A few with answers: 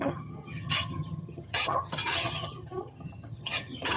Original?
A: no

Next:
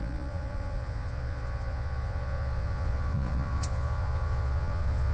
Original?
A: no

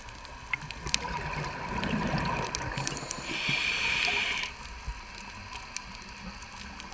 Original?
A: yes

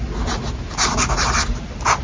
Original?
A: yes